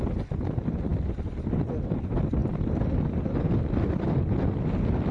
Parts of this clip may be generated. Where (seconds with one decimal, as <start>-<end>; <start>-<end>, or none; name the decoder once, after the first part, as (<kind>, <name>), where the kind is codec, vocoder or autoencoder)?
none